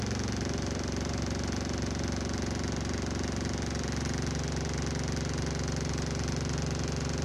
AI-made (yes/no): no